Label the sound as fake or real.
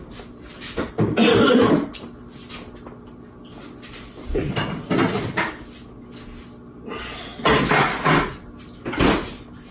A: real